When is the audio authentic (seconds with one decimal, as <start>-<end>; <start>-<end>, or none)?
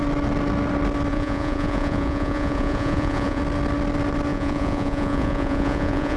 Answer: 0.0-1.1; 3.4-4.3